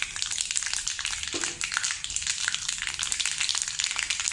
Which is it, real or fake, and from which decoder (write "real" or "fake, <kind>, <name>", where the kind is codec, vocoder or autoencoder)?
real